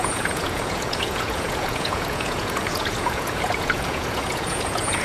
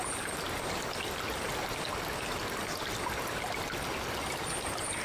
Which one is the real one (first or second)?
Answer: second